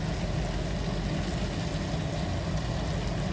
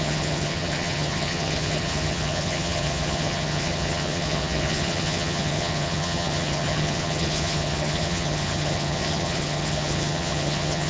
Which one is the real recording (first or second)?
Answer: first